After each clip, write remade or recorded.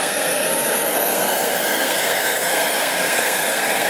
remade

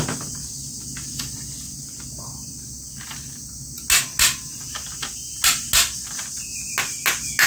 recorded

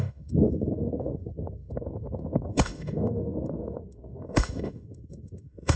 remade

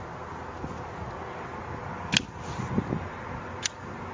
recorded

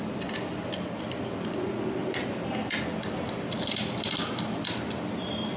recorded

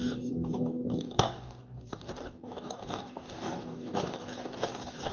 remade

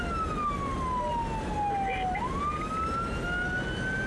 recorded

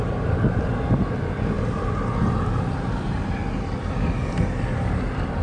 recorded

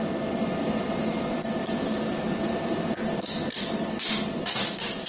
remade